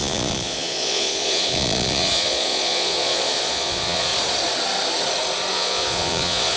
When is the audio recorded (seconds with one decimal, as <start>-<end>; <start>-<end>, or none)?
4.1-5.5